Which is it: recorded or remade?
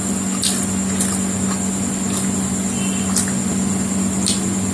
recorded